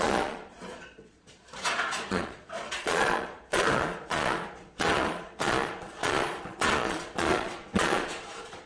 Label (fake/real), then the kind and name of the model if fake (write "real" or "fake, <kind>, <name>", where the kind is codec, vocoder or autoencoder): fake, vocoder, Vocos